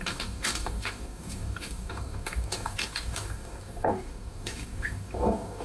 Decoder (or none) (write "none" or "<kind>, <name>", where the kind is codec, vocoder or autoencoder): codec, DAC